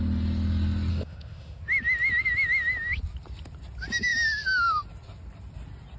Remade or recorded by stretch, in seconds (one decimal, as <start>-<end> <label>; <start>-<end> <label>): 0.0-0.9 recorded; 0.9-1.6 remade; 1.6-6.0 recorded